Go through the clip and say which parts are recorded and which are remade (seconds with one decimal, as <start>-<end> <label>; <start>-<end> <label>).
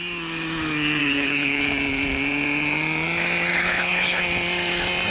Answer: 0.0-1.0 recorded; 1.0-1.6 remade; 1.6-3.5 recorded; 3.5-4.2 remade; 4.2-5.1 recorded